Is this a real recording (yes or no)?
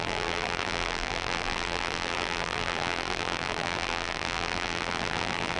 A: no